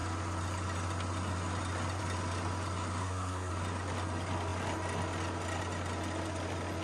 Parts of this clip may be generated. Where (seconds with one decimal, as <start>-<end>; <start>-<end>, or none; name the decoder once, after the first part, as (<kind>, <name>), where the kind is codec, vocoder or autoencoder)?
3.0-3.5 (codec, SNAC)